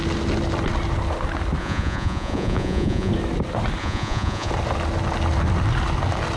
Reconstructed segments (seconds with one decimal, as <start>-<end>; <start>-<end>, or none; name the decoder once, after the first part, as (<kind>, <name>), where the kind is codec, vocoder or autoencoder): 1.6-3.1 (vocoder, Vocos); 3.8-4.5

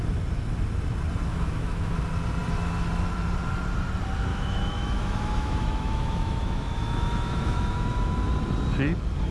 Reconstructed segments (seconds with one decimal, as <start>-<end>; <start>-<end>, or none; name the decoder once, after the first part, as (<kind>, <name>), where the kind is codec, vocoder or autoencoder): 1.3-2.0 (autoencoder, DAC-VAE); 4.3-8.3

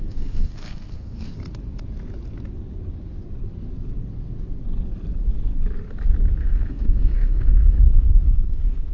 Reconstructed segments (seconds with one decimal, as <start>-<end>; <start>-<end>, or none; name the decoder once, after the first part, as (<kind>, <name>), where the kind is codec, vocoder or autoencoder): 0.0-1.4 (codec, SNAC); 6.3-8.9

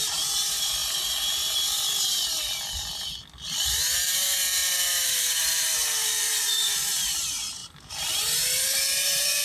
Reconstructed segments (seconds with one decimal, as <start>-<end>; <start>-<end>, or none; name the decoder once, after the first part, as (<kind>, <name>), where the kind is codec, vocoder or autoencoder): 0.0-0.8 (vocoder, BigVGAN v2); 3.8-9.4

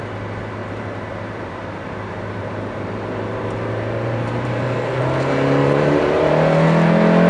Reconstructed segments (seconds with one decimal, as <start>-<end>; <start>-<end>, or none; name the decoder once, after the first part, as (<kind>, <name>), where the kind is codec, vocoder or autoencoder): 0.6-5.0 (vocoder, BigVGAN v2); 5.6-6.3

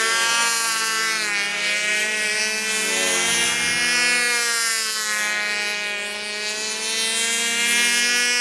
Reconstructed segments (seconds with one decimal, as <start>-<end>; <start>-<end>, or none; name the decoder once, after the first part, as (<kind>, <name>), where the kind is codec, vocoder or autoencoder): 1.5-2.4 (vocoder, BigVGAN v2)